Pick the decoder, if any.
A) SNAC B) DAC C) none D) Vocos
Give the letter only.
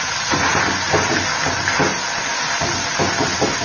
C